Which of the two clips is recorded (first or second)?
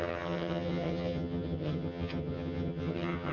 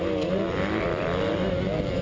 second